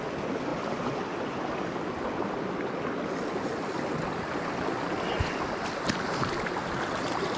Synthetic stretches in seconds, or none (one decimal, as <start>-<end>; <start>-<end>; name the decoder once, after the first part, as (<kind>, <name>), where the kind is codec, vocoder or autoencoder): none